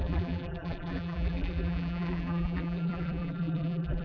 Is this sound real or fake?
fake